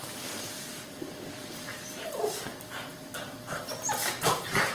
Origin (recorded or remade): remade